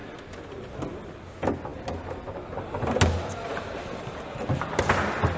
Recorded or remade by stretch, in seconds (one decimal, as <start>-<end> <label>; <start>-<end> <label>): 0.0-5.4 recorded